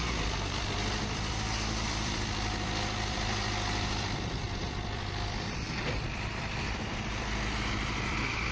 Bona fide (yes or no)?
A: no